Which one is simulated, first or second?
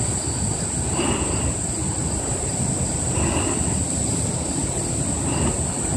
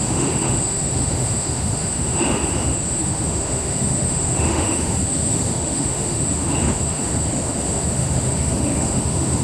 second